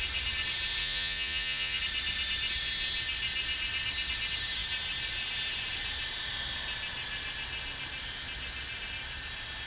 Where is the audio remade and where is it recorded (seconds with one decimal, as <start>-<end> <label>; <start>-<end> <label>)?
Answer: 0.0-0.8 recorded; 0.8-1.8 remade; 1.8-9.7 recorded

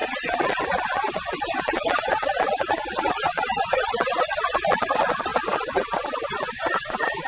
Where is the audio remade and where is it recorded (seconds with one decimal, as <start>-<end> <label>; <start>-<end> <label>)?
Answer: 0.0-7.3 remade

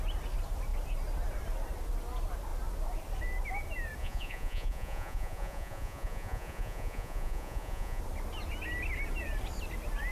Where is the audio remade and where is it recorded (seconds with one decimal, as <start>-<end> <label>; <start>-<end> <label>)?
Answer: 0.0-4.0 recorded; 4.0-8.0 remade; 8.0-10.1 recorded

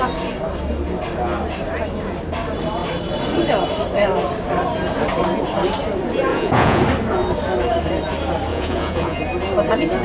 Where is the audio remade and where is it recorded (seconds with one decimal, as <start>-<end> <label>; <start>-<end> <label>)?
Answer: 0.0-6.3 recorded; 6.3-6.8 remade; 6.8-8.5 recorded; 8.5-9.2 remade; 9.2-10.0 recorded

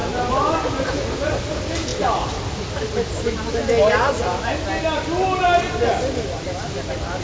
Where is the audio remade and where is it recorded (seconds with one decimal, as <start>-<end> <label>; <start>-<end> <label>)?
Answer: 0.0-7.2 recorded